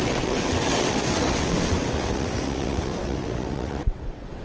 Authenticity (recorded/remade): remade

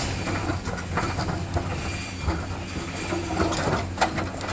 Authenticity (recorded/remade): recorded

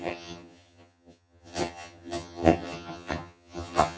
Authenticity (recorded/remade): remade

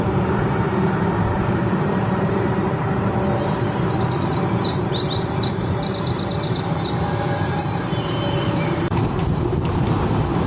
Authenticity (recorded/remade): remade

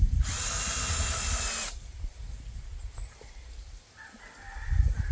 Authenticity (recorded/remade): recorded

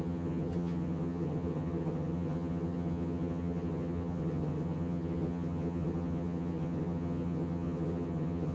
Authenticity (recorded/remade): remade